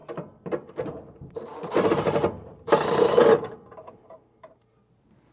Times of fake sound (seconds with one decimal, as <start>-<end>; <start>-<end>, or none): 0.8-5.3